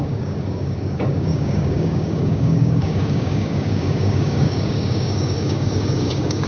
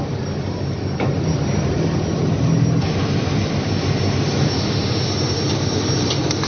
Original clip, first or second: second